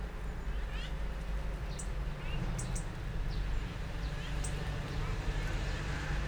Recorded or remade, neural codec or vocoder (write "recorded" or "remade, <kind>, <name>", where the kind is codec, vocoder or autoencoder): recorded